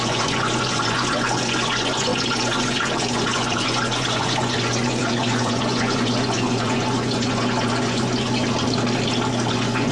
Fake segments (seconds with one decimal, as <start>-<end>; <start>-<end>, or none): 0.0-8.4; 9.5-9.9